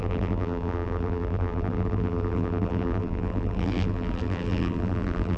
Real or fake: fake